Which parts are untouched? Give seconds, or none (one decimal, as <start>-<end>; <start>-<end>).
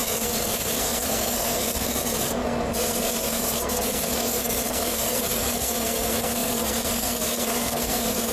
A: none